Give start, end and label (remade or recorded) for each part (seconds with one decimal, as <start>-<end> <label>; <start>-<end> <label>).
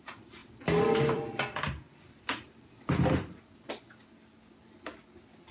0.0-0.4 recorded; 0.4-3.7 remade; 3.7-5.5 recorded